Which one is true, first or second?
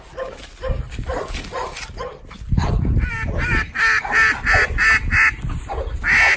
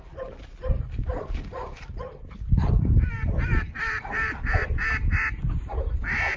first